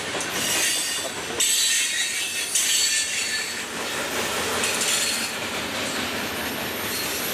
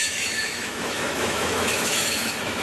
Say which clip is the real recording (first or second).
first